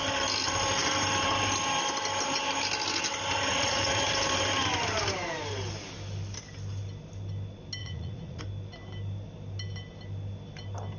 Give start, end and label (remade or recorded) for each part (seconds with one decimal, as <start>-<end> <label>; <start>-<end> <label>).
0.0-3.5 recorded; 3.5-4.1 remade; 4.1-7.8 recorded; 7.8-8.4 remade; 8.4-11.0 recorded